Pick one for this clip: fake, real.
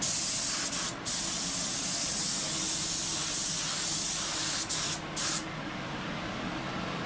real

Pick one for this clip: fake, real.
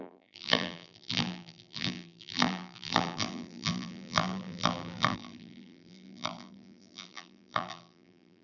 fake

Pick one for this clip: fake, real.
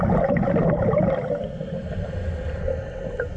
real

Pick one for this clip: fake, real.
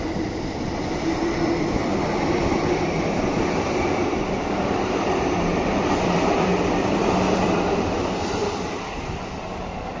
fake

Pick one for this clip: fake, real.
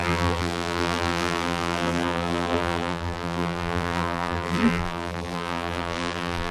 fake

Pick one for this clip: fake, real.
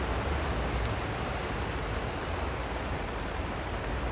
real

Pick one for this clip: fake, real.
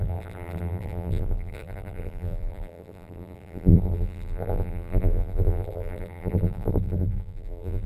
fake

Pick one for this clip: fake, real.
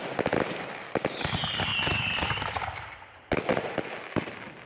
real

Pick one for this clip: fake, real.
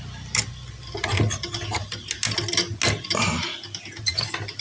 real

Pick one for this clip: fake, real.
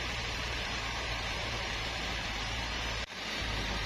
fake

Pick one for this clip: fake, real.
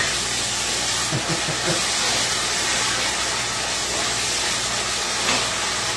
real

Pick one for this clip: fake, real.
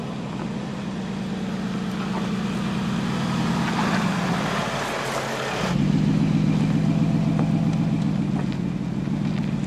real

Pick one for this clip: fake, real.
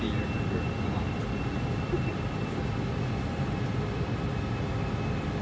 real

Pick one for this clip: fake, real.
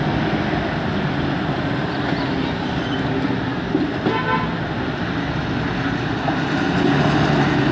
real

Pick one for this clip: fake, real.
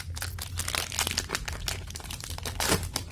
real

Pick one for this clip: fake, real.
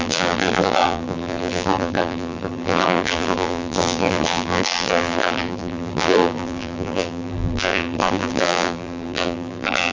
fake